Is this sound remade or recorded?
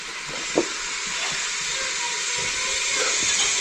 recorded